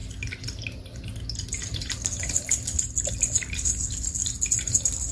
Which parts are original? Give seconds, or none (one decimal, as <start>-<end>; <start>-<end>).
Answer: 0.0-5.1